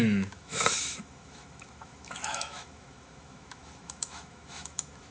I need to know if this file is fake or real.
fake